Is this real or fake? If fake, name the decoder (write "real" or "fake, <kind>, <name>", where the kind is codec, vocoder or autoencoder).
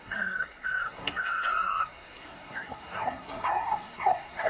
fake, codec, SNAC